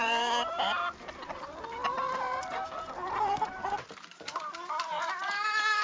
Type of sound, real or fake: fake